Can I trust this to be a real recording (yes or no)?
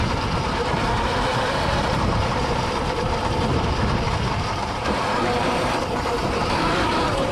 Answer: no